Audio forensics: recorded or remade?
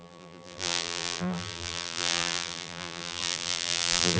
remade